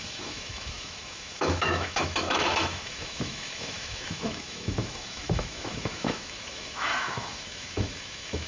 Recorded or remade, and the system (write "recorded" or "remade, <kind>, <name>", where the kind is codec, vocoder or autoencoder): remade, autoencoder, DAC-VAE